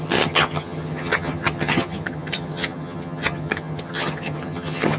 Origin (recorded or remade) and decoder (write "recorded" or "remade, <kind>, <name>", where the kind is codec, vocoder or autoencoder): remade, vocoder, HiFi-GAN